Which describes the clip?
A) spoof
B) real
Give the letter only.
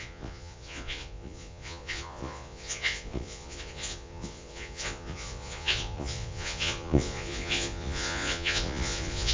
A